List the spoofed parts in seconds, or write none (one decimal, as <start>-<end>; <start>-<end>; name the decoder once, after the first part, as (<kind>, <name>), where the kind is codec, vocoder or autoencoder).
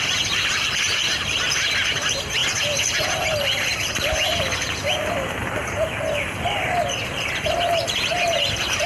none